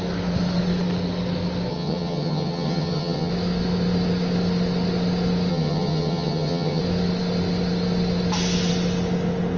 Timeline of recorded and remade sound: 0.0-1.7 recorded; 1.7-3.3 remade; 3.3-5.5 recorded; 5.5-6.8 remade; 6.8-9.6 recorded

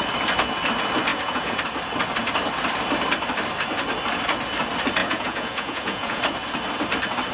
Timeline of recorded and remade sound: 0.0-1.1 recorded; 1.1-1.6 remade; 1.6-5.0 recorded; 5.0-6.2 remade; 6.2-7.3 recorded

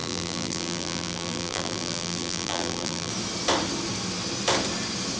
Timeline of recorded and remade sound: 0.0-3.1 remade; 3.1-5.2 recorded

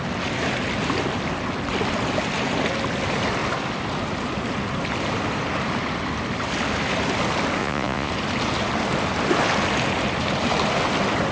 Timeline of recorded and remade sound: 0.0-7.6 recorded; 7.6-8.1 remade; 8.1-11.3 recorded

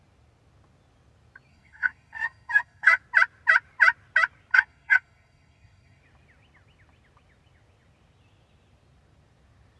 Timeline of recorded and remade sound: 0.0-1.5 recorded; 1.5-3.0 remade; 3.0-4.5 recorded; 4.5-6.0 remade; 6.0-9.8 recorded

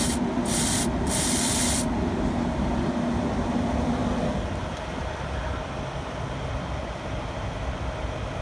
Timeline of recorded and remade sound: 0.0-8.4 recorded

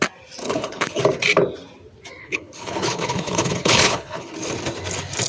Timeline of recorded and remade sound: 0.0-0.4 recorded; 0.4-1.0 remade; 1.0-2.2 recorded; 2.2-4.3 remade; 4.3-5.3 recorded

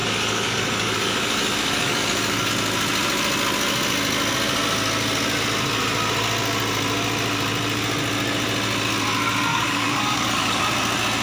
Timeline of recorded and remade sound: 0.0-2.5 remade; 2.5-9.5 recorded; 9.5-10.6 remade; 10.6-11.2 recorded